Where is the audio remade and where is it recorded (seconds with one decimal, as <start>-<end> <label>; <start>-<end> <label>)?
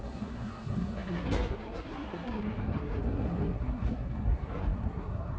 0.0-5.4 remade